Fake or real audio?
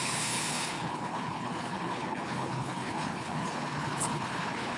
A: fake